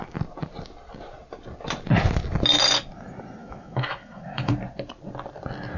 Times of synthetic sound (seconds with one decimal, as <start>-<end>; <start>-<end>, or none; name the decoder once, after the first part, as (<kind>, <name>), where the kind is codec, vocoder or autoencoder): 3.4-4.5 (autoencoder, DAC-VAE)